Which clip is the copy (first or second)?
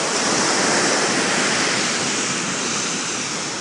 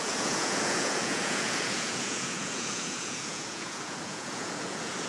second